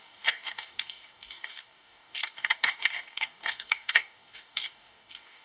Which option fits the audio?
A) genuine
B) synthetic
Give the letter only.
B